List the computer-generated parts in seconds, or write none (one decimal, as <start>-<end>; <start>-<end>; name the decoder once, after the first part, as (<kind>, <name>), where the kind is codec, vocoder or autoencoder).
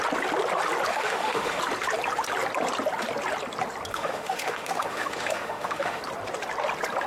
0.9-1.6 (autoencoder, DAC-VAE); 3.9-6.0